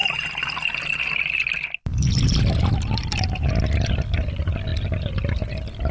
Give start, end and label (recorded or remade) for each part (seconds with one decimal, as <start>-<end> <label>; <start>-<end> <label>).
0.0-3.5 remade; 3.5-4.7 recorded; 4.7-5.5 remade; 5.5-5.9 recorded